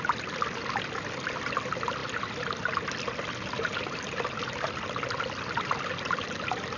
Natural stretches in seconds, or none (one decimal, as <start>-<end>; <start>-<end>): 0.0-6.8